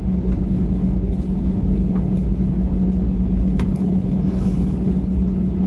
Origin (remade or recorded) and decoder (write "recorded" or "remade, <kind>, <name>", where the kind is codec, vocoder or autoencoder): remade, codec, HILCodec